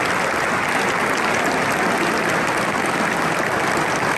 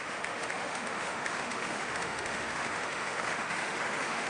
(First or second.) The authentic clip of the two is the first